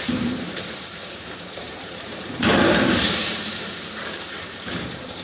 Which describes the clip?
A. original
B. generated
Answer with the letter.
B